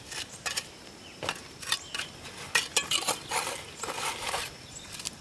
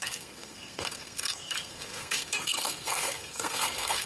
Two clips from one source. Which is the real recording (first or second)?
first